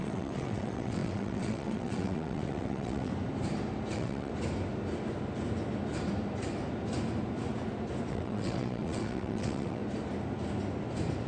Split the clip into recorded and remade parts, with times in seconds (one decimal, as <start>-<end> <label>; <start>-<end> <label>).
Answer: 0.0-3.1 remade; 3.1-3.9 recorded; 3.9-4.3 remade; 4.3-8.1 recorded; 8.1-9.8 remade; 9.8-11.3 recorded